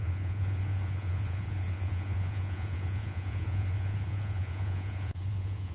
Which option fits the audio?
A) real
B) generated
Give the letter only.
B